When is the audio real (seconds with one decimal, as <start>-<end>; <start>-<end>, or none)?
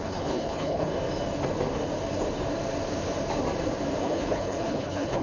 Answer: 0.9-4.0